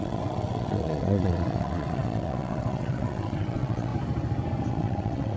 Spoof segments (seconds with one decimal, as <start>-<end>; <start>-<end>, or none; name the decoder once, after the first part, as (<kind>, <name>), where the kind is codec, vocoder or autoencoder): 0.0-3.9 (vocoder, WaveNeXt); 4.7-5.4